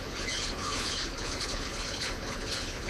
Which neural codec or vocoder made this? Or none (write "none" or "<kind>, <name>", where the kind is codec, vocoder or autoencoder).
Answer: codec, HILCodec